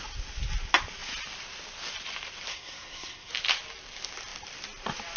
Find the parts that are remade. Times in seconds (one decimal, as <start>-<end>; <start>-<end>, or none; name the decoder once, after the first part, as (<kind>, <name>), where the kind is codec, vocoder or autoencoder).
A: 2.5-3.3 (codec, SNAC)